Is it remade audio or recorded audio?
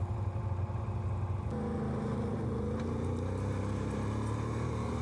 recorded